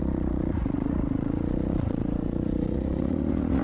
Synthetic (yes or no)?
yes